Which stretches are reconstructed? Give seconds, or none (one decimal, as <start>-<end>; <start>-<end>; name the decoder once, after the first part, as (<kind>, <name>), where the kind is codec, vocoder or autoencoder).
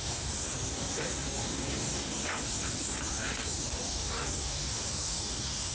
0.0-5.7 (codec, DAC)